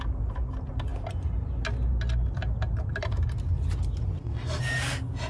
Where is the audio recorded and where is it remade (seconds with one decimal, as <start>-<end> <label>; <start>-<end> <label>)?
0.0-5.3 recorded

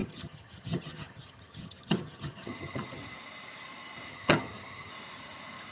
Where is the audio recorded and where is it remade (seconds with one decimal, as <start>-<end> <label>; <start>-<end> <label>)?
0.0-3.0 remade; 3.0-4.1 recorded; 4.1-4.9 remade; 4.9-5.7 recorded

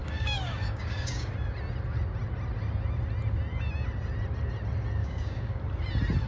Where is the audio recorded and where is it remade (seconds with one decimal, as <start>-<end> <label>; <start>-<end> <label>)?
0.0-1.3 remade; 1.3-5.0 recorded; 5.0-5.6 remade; 5.6-6.3 recorded

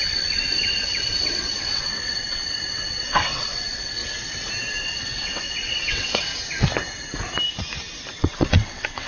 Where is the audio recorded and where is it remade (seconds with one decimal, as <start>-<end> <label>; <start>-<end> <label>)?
0.0-4.0 remade; 4.0-4.8 recorded; 4.8-6.3 remade; 6.3-8.2 recorded; 8.2-9.1 remade

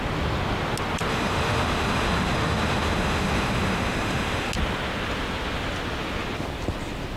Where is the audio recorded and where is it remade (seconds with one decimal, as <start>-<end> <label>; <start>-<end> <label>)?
0.0-1.1 recorded; 1.1-4.5 remade; 4.5-7.2 recorded